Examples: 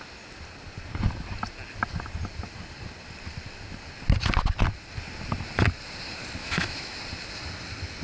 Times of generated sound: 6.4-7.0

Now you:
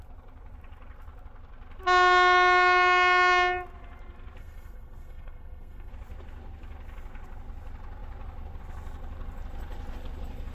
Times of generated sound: 4.4-5.9

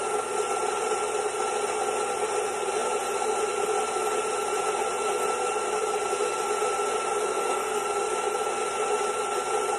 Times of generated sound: 7.3-7.8

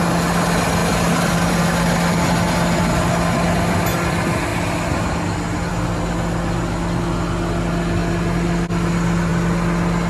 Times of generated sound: none

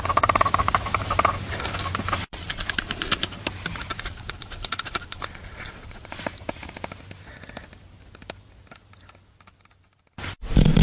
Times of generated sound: 2.3-3.2; 3.9-6.2

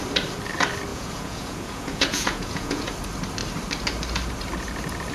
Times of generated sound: 0.9-2.9

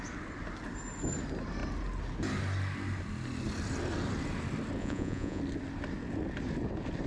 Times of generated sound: 4.8-5.4